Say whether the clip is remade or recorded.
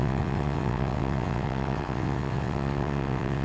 remade